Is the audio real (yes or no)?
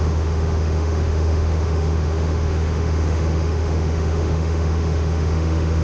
no